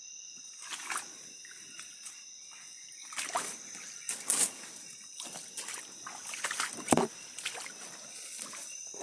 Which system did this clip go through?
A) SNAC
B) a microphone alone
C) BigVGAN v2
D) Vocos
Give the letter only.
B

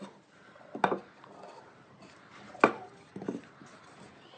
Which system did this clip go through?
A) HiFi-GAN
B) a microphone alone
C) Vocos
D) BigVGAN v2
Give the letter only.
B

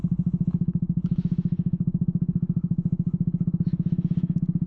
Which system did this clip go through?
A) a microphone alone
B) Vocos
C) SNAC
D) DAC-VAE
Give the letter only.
D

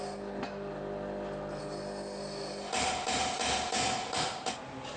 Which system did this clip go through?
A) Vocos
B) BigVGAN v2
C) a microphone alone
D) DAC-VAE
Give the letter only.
C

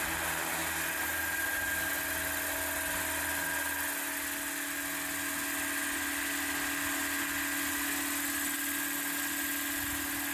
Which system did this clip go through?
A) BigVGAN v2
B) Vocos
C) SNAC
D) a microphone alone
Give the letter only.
D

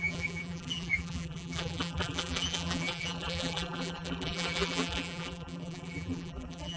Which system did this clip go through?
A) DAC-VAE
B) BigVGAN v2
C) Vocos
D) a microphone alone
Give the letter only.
B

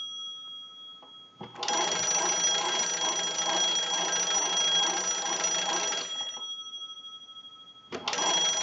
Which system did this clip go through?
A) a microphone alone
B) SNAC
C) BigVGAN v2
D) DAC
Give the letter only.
A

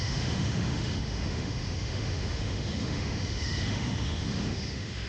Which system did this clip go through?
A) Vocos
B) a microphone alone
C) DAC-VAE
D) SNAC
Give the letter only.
C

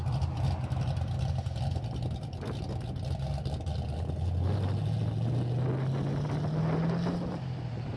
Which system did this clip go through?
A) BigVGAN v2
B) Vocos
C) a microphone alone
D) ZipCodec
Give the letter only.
C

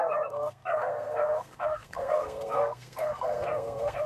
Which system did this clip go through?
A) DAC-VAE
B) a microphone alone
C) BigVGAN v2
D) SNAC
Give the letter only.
D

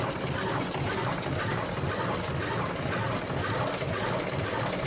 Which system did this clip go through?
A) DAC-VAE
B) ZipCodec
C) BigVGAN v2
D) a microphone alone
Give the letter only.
D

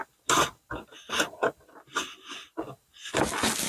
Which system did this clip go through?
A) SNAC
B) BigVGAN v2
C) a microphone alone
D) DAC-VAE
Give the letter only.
C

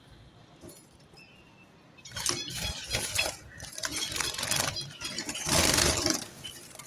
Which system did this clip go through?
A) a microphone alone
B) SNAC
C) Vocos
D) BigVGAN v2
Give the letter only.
A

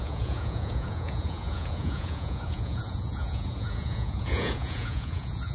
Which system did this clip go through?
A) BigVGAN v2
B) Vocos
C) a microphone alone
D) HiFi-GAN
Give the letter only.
B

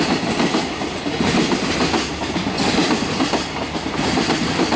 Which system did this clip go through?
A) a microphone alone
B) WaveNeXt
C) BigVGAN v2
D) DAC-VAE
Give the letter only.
A